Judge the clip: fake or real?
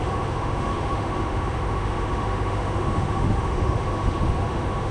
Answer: fake